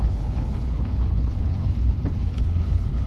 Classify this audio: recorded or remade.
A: remade